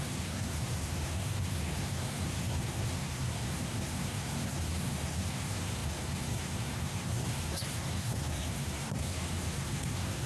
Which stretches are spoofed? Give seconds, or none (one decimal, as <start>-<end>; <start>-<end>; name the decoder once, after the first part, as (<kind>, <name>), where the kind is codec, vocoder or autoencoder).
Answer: 0.0-10.3 (codec, SNAC)